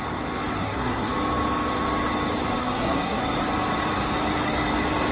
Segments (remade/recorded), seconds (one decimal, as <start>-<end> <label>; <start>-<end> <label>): 0.0-0.6 recorded; 0.6-1.1 remade; 1.1-2.6 recorded; 2.6-3.2 remade; 3.2-5.1 recorded